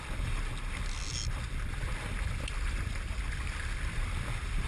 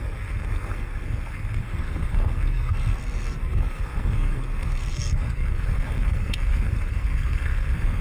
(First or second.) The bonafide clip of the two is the first